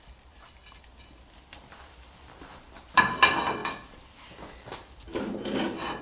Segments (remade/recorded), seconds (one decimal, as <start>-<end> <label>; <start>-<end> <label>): 0.0-1.5 recorded; 1.5-3.0 remade; 3.0-3.6 recorded; 3.6-5.2 remade; 5.2-6.0 recorded